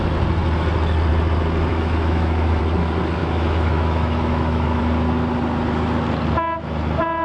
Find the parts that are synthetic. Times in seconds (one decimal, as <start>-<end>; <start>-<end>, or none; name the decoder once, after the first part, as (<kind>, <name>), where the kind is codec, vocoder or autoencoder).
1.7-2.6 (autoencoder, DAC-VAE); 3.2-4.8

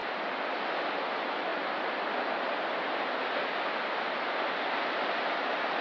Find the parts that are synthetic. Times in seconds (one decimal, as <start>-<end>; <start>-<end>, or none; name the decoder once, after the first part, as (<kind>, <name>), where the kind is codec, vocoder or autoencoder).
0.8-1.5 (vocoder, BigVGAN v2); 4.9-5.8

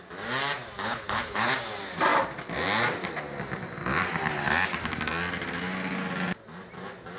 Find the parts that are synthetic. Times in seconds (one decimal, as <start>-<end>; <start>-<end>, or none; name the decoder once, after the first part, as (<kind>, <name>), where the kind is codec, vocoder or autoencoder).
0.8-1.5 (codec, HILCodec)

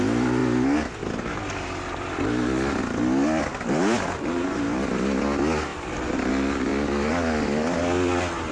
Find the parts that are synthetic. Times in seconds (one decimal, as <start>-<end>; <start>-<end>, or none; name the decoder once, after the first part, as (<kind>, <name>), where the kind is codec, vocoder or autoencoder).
none

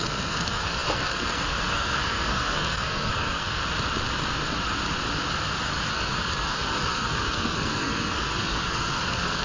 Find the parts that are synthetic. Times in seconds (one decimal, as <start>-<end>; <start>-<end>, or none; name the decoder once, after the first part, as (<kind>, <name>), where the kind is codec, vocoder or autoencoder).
0.0-3.6 (codec, SNAC); 5.9-9.4

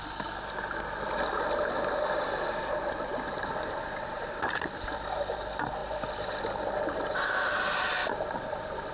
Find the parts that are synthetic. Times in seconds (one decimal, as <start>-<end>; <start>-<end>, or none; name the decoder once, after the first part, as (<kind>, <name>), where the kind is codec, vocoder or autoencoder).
3.1-5.2 (vocoder, BigVGAN v2); 8.0-8.9